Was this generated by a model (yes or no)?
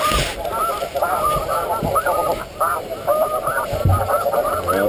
no